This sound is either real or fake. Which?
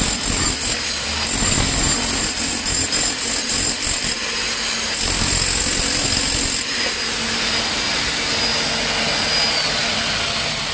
real